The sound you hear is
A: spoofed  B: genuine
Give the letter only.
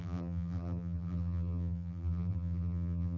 A